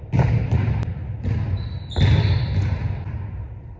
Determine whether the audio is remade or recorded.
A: recorded